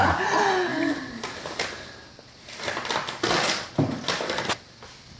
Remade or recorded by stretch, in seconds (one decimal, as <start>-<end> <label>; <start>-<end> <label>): 0.0-5.2 recorded